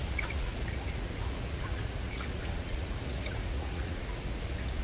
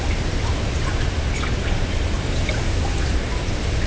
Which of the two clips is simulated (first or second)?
first